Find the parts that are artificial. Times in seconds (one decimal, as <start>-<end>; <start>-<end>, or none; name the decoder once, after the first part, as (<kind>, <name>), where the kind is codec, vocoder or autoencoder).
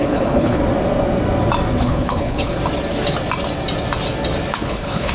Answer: 0.0-0.6 (codec, HILCodec); 1.8-2.5; 4.5-5.1